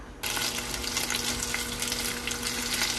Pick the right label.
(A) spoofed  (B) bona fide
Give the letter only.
B